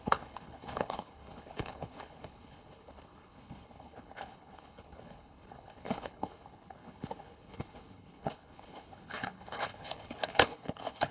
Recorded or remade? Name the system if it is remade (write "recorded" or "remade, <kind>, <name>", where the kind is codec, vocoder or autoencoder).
remade, codec, HILCodec